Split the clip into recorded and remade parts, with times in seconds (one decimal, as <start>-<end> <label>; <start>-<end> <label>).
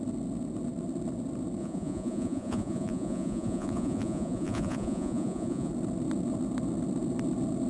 0.0-1.6 recorded; 1.6-5.7 remade; 5.7-7.7 recorded